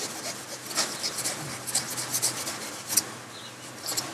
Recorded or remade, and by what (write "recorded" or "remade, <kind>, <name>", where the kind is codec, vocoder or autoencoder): recorded